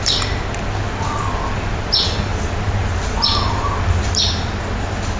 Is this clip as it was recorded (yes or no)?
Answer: yes